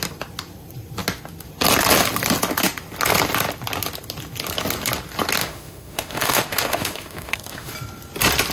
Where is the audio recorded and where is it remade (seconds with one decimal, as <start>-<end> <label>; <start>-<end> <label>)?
0.0-5.4 recorded; 5.4-7.7 remade; 7.7-8.5 recorded